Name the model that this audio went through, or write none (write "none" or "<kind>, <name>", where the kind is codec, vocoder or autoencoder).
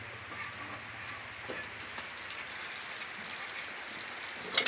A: none